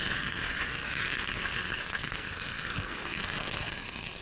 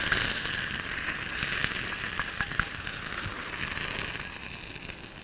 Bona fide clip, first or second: second